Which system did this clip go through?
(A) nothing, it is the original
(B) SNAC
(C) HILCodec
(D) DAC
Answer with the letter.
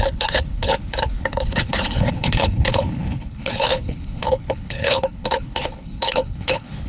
C